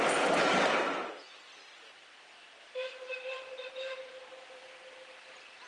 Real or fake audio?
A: real